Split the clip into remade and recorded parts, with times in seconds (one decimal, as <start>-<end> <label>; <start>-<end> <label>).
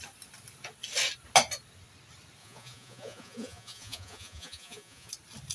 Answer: 0.0-2.4 recorded; 2.4-5.1 remade; 5.1-5.5 recorded